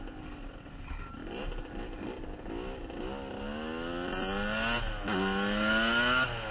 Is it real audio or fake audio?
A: real